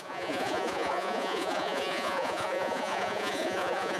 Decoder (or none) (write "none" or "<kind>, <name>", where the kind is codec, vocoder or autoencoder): vocoder, Vocos